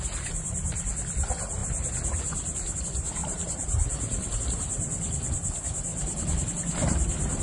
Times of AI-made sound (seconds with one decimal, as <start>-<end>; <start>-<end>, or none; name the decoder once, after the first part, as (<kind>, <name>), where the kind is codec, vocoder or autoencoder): 3.2-4.4 (vocoder, BigVGAN v2)